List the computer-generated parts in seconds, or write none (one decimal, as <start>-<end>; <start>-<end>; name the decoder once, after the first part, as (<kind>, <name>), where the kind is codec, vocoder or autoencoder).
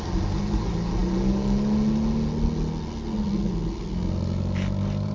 none